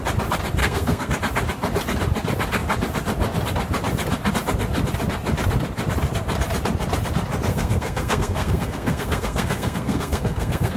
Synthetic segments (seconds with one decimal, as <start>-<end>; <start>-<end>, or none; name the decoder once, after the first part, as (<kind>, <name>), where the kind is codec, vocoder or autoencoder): 0.6-1.1 (codec, SNAC); 7.5-10.8